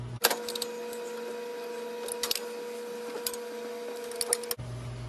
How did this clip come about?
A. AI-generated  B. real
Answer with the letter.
B